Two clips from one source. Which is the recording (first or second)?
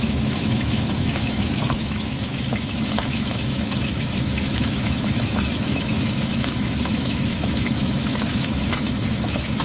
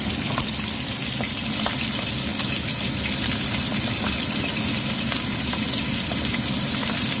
second